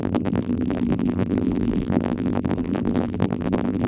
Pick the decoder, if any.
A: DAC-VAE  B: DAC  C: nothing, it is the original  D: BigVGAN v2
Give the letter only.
D